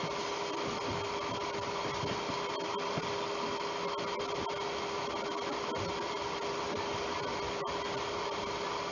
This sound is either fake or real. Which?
real